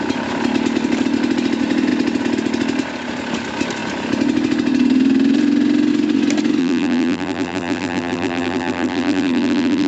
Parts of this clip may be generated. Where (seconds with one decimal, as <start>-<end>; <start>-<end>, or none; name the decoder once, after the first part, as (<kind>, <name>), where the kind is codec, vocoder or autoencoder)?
6.6-9.9 (vocoder, BigVGAN v2)